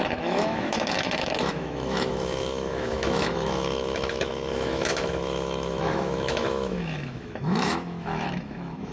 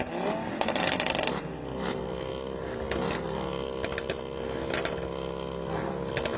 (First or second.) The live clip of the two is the second